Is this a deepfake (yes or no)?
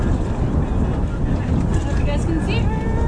no